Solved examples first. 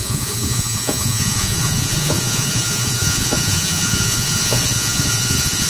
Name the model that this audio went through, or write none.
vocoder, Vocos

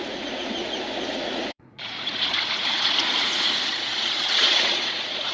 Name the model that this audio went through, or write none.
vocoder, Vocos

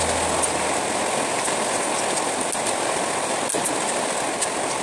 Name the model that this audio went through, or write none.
none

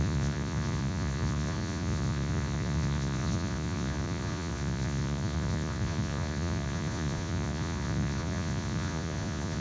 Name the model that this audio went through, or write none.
vocoder, Vocos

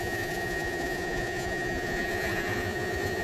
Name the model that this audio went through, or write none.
vocoder, Vocos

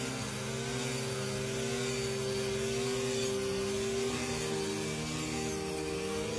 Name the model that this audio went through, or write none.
none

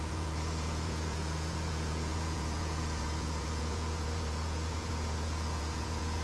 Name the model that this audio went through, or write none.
vocoder, Vocos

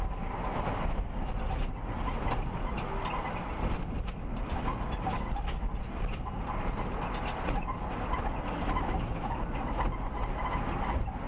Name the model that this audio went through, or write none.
none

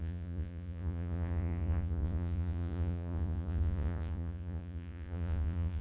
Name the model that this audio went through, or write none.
vocoder, Vocos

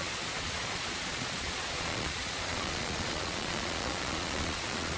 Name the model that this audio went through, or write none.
vocoder, Vocos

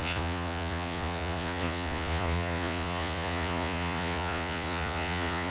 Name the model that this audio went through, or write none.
vocoder, Vocos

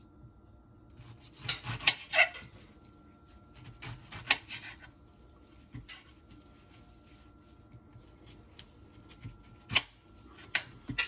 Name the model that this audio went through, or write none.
none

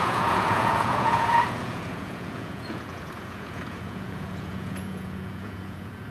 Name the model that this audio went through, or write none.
vocoder, Vocos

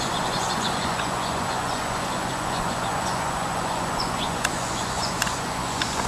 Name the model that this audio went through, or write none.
vocoder, Vocos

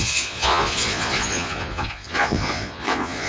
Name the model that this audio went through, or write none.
vocoder, Vocos